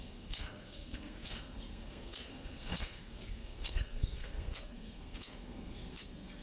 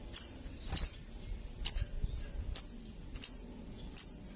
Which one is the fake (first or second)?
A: first